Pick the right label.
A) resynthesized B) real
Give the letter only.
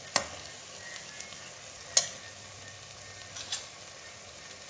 B